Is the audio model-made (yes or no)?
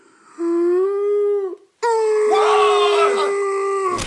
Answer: no